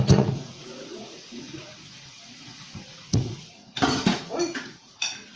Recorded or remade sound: remade